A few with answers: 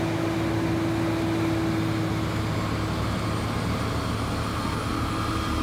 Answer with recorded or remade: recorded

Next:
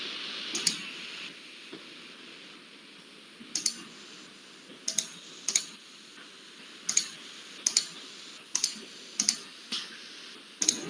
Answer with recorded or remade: recorded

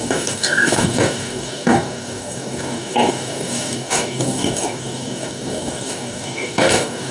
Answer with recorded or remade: remade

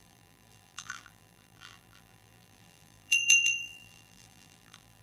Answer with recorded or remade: remade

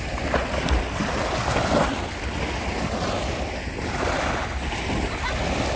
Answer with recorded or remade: recorded